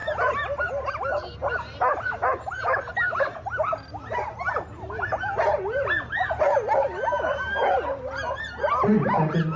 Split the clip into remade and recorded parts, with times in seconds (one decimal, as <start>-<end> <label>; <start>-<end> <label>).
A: 0.0-9.6 recorded